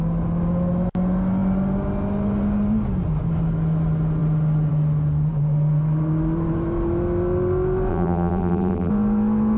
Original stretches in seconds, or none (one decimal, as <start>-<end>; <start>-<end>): 0.0-7.9; 8.9-9.6